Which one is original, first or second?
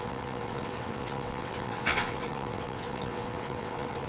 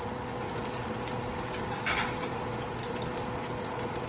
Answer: second